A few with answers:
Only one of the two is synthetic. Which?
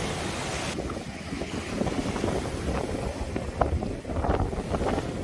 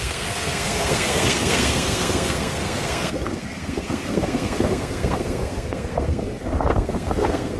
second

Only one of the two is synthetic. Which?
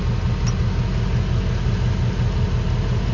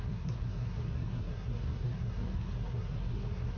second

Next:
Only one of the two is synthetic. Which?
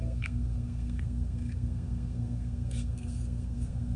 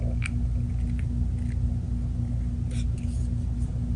first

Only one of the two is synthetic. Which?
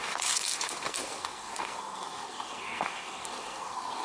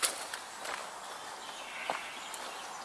first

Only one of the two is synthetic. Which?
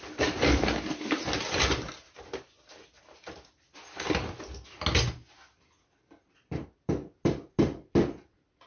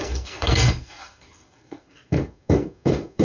second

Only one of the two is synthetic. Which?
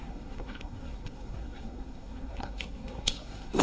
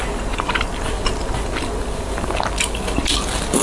first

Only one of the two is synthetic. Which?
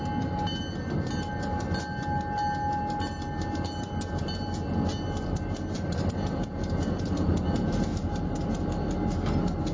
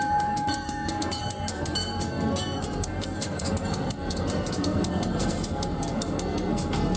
second